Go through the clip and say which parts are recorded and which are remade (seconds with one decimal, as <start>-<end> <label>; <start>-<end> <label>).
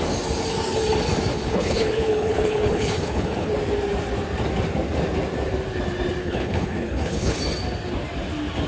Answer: 0.0-1.3 recorded; 1.3-3.5 remade; 3.5-6.2 recorded; 6.2-7.4 remade; 7.4-8.7 recorded